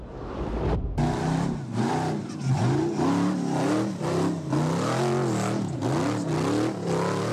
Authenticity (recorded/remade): recorded